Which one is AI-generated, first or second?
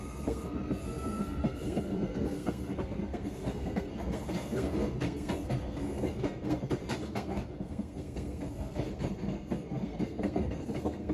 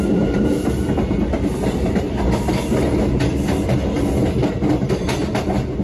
first